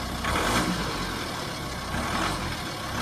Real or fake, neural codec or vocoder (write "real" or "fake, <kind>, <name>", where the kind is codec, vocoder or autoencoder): real